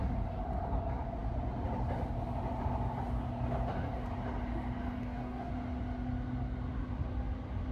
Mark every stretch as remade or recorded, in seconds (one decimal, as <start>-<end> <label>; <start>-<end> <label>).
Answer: 0.0-5.0 recorded; 5.0-5.5 remade; 5.5-7.7 recorded